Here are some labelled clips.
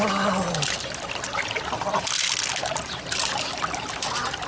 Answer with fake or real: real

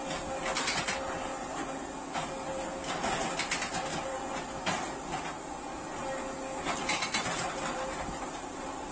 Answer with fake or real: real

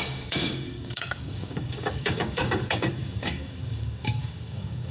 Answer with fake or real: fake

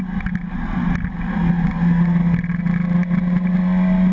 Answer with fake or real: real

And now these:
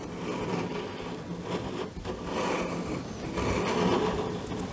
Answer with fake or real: real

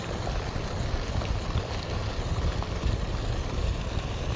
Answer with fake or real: real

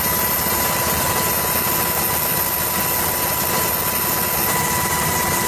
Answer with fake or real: real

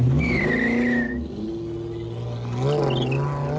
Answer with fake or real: real